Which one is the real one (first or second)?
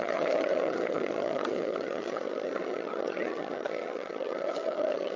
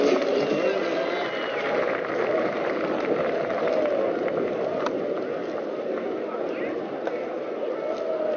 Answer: second